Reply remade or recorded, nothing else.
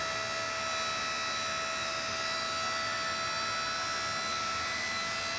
recorded